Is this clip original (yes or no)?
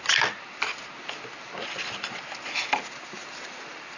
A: yes